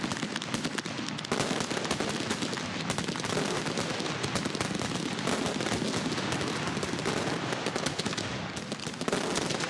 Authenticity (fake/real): real